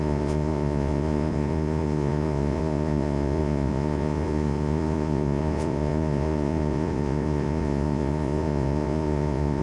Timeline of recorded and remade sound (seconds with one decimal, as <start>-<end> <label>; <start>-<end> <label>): 0.0-9.6 remade